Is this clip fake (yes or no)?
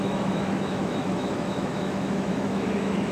yes